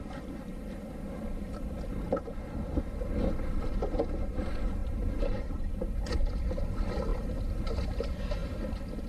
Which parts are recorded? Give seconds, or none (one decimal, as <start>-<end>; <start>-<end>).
0.0-4.8; 5.7-9.1